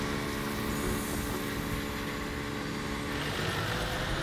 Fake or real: real